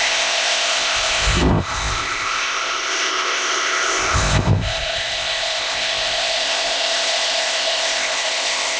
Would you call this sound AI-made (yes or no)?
yes